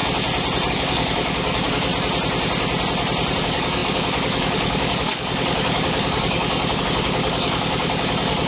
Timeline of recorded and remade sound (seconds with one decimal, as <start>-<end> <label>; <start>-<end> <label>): 0.0-0.7 recorded; 0.7-1.9 remade; 1.9-3.4 recorded; 3.4-8.5 remade